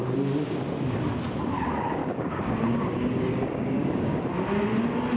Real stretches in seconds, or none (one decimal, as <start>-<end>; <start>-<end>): 0.0-2.0; 4.2-5.2